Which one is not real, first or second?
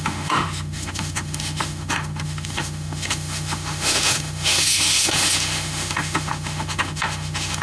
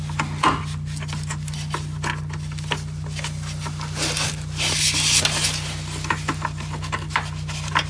first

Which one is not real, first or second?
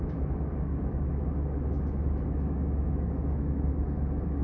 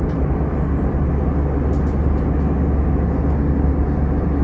first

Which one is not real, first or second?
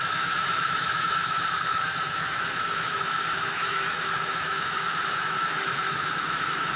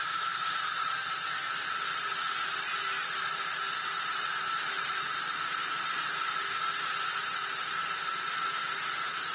first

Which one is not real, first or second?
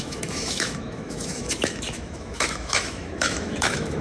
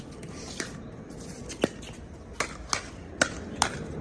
first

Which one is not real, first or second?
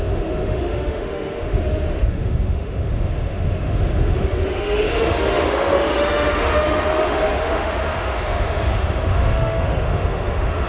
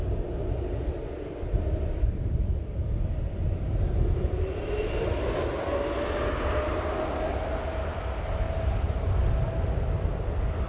first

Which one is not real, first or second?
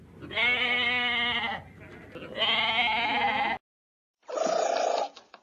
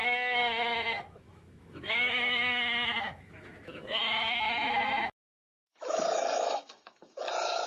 second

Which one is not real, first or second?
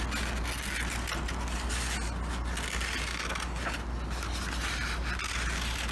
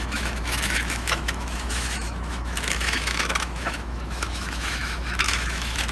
second